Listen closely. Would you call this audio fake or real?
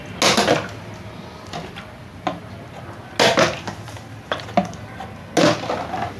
real